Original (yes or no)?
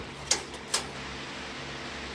yes